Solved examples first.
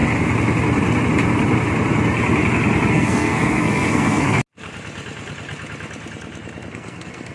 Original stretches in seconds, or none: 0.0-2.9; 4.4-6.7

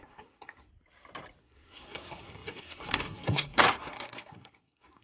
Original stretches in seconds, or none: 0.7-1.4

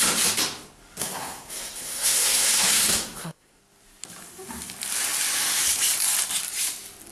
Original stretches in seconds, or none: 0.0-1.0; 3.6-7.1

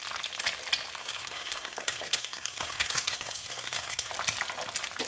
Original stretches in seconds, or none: 0.0-1.0; 4.1-5.1

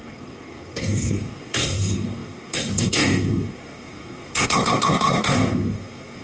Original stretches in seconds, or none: none

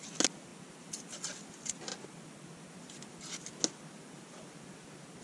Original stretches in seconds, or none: 0.0-5.2

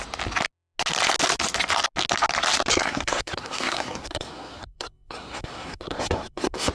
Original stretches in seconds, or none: 0.0-2.7